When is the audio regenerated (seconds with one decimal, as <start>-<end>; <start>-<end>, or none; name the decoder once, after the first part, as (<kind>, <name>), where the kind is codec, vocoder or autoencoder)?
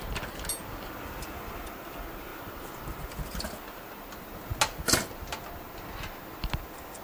none